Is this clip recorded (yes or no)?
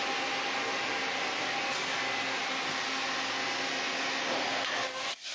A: yes